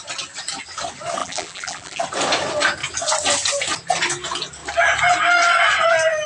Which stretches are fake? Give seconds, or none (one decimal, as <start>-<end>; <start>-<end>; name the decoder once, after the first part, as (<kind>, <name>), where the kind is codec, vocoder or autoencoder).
1.2-2.0 (vocoder, BigVGAN v2)